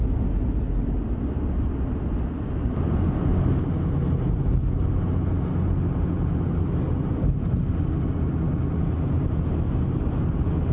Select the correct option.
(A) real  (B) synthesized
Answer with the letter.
A